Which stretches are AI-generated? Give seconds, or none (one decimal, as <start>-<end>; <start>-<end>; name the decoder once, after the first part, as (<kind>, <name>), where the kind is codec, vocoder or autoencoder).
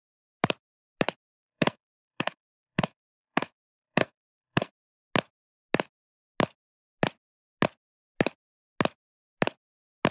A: 1.3-4.7 (codec, SNAC)